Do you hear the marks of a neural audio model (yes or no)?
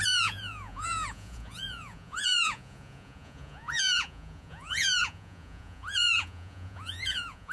yes